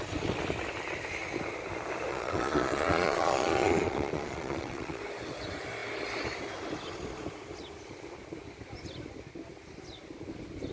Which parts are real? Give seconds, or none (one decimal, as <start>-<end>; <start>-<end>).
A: 0.0-2.1; 5.0-10.7